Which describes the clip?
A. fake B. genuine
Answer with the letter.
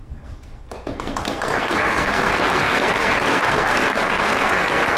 A